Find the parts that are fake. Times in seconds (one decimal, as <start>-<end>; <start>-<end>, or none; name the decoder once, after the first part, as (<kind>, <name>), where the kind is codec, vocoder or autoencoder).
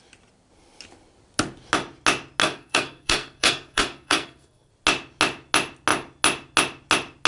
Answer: 2.4-4.7 (codec, SNAC)